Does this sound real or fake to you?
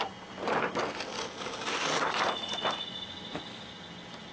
real